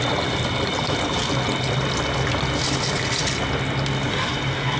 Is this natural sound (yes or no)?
yes